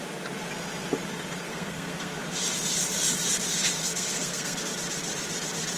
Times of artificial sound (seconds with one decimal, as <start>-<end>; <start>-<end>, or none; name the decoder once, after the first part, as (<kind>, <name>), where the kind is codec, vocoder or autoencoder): 1.5-2.1 (codec, SNAC); 3.8-4.6

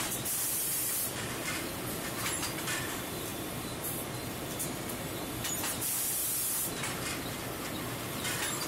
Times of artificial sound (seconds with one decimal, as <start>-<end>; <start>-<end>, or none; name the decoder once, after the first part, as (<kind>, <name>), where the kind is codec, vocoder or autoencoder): 0.0-3.3 (vocoder, BigVGAN v2); 5.3-6.2; 8.1-8.7

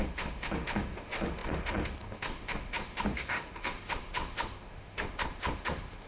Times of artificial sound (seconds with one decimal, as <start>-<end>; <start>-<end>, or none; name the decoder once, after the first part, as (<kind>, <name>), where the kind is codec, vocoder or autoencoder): 0.0-6.1 (autoencoder, DAC-VAE)

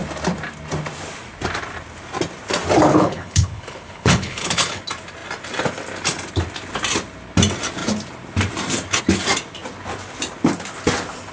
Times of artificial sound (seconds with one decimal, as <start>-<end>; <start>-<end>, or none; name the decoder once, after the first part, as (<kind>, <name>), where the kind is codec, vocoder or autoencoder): 2.9-4.8 (codec, HILCodec)